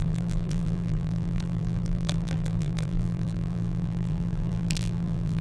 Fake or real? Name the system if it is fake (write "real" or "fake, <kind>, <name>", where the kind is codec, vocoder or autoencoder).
fake, vocoder, BigVGAN v2